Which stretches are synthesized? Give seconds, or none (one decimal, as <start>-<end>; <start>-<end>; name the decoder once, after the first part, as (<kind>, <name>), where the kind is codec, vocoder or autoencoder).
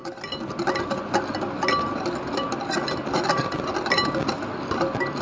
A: none